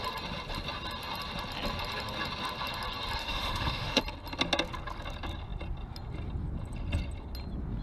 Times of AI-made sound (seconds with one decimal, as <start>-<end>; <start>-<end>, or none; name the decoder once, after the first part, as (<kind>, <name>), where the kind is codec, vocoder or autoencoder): 3.2-4.0 (autoencoder, DAC-VAE)